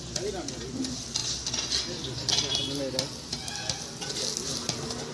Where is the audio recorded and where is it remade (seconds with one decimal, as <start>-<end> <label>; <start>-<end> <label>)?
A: 0.0-5.1 recorded